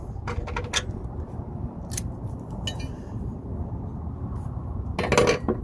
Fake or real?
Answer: real